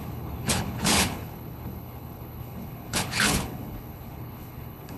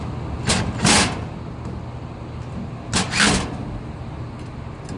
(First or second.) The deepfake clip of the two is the first